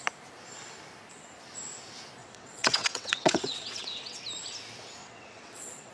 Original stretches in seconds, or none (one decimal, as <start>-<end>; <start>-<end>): 0.0-2.2; 4.2-5.0